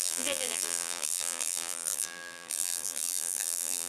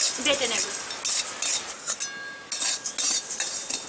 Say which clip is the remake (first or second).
first